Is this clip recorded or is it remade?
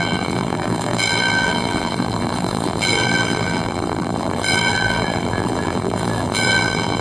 remade